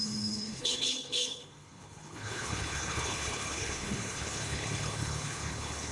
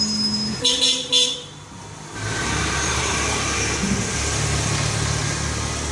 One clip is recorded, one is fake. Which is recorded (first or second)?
second